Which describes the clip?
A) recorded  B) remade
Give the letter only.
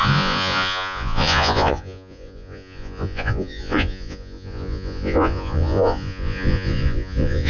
B